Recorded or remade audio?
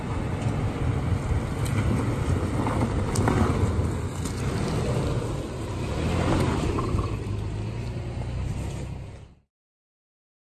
recorded